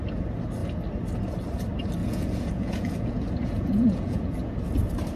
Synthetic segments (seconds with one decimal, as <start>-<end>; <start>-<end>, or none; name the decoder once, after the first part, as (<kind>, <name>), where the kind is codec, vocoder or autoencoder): 2.0-4.6 (vocoder, Vocos)